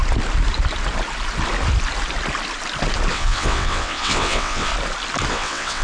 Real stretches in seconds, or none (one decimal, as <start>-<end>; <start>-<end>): 0.0-3.1; 4.7-5.3